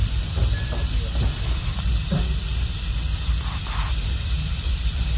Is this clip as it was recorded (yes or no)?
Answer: yes